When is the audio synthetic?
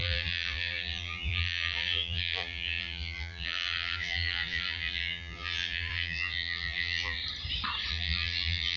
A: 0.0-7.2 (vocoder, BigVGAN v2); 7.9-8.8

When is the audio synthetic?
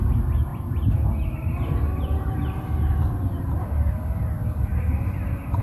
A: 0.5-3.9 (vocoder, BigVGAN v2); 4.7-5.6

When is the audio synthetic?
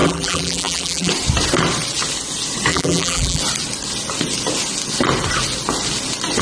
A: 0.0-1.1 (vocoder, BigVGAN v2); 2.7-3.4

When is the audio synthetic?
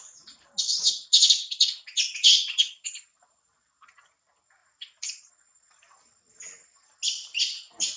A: 4.6-5.3 (vocoder, BigVGAN v2)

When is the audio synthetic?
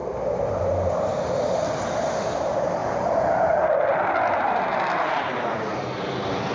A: 2.8-3.3 (vocoder, BigVGAN v2)